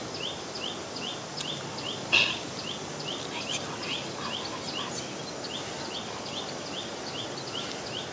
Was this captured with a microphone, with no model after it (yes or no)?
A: yes